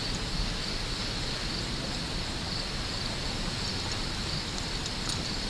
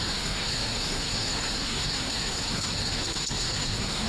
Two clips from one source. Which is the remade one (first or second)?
second